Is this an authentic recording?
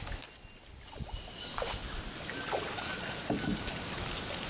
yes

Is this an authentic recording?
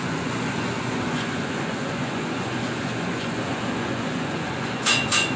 no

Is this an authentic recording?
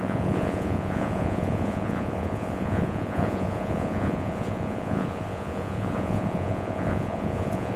no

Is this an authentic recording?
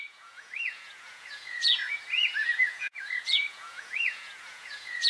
no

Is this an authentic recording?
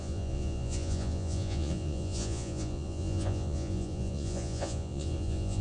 no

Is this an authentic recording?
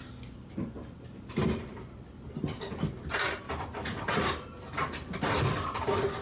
yes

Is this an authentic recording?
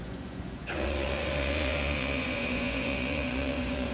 no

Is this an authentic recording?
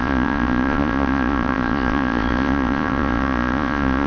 no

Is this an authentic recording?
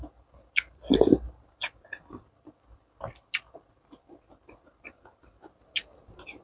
yes